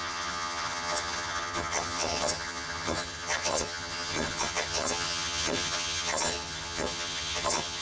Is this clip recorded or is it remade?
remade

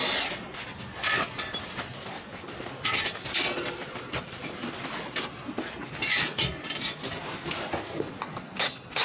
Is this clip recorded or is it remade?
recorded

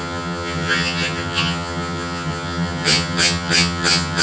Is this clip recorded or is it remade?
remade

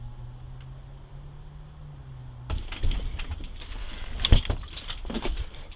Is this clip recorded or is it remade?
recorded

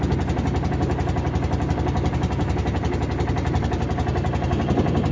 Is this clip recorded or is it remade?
recorded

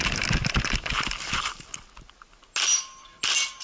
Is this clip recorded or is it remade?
recorded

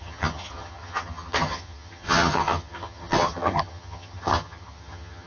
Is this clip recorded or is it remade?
remade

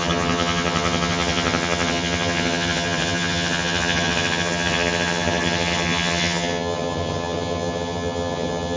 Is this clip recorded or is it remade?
remade